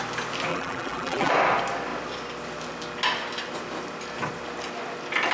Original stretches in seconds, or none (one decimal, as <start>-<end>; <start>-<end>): 0.0-0.5; 1.3-5.3